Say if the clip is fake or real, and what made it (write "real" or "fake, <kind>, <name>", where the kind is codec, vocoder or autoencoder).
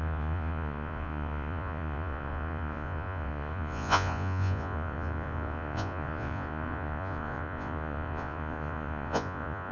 fake, vocoder, Vocos